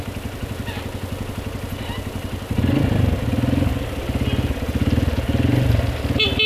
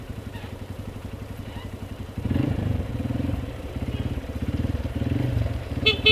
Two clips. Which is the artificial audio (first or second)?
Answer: second